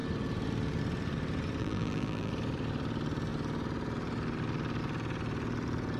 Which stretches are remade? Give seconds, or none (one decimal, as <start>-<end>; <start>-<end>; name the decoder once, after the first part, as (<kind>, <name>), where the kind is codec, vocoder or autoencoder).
1.6-2.3 (vocoder, BigVGAN v2)